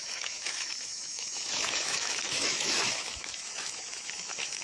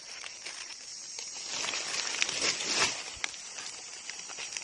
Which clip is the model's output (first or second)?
first